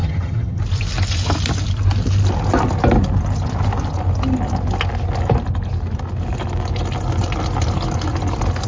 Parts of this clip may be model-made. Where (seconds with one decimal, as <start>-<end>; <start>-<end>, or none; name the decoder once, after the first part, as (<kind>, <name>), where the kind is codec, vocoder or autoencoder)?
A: 0.0-0.6 (vocoder, HiFi-GAN)